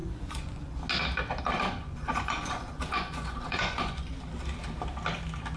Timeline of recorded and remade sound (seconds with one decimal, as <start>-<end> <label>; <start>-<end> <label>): 0.0-0.8 remade; 0.8-1.5 recorded; 1.5-4.1 remade; 4.1-5.6 recorded